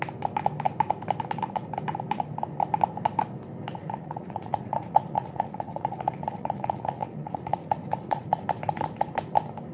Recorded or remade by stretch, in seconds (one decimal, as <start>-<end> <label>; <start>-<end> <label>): 0.0-3.8 recorded; 3.8-8.4 remade; 8.4-9.7 recorded